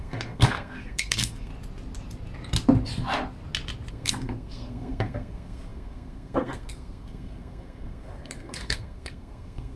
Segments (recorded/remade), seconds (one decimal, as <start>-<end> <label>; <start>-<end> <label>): 0.0-1.5 remade; 1.5-3.9 recorded; 3.9-9.8 remade